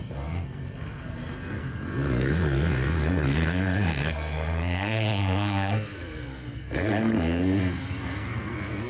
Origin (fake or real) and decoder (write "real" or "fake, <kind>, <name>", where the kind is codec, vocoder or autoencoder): fake, codec, SNAC